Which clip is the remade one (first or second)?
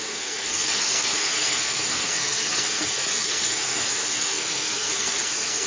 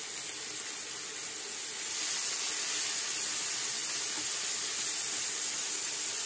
first